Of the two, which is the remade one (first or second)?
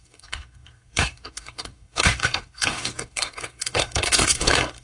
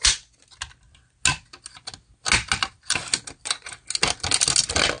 first